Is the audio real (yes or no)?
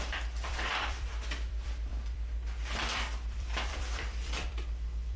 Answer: no